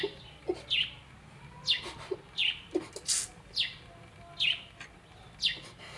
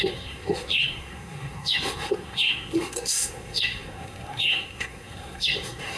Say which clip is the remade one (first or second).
second